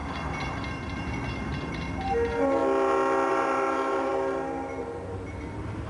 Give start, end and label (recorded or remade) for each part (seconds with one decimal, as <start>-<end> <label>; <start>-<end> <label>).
0.0-2.6 remade; 2.6-3.3 recorded; 3.3-4.1 remade; 4.1-4.8 recorded; 4.8-5.9 remade